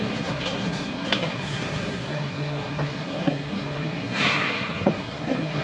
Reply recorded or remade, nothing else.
remade